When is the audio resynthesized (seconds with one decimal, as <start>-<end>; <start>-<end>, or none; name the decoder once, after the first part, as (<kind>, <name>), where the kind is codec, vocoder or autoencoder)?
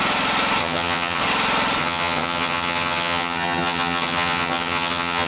0.6-1.2 (vocoder, HiFi-GAN); 1.8-5.3